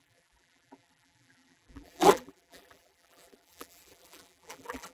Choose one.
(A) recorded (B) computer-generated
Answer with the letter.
B